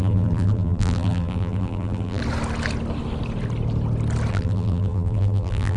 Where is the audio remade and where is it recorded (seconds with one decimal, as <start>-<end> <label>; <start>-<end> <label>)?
0.0-2.2 remade; 2.2-4.3 recorded; 4.3-5.8 remade